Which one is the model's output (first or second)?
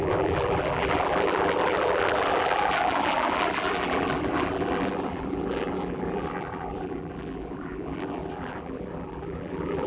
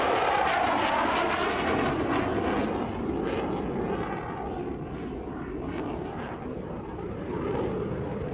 first